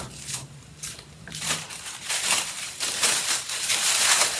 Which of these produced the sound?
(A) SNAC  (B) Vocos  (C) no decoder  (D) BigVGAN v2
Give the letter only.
D